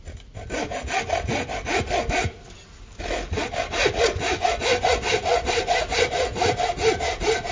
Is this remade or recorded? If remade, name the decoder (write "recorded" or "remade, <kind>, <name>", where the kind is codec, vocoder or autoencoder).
recorded